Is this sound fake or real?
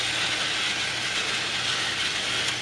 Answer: real